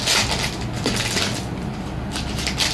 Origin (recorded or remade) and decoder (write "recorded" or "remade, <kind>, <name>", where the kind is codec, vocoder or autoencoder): recorded